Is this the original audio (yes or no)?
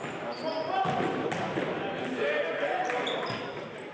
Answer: yes